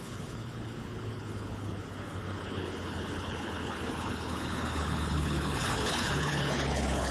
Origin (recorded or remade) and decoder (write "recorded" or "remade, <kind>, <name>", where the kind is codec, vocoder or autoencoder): remade, codec, HILCodec